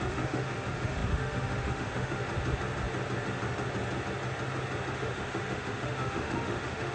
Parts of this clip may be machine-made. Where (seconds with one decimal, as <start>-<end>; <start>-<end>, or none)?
0.0-2.2; 4.9-6.9